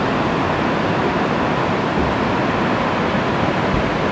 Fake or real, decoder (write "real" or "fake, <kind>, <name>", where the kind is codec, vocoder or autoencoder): real